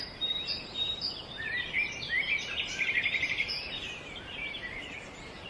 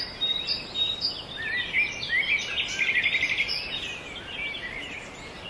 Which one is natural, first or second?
second